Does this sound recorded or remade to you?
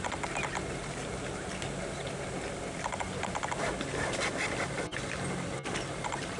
recorded